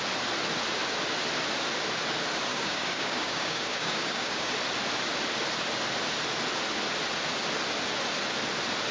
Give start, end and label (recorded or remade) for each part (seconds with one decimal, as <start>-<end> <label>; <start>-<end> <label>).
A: 0.0-2.5 recorded; 2.5-4.5 remade; 4.5-8.9 recorded